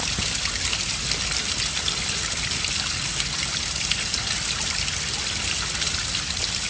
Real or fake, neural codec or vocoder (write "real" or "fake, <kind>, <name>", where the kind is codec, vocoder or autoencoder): real